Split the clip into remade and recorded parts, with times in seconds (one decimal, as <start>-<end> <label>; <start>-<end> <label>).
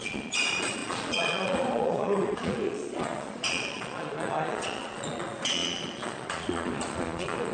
0.0-7.5 remade